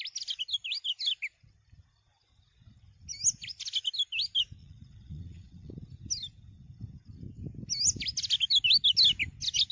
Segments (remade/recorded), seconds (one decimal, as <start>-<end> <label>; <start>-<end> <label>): 0.0-4.6 recorded; 4.6-5.7 remade; 5.7-9.7 recorded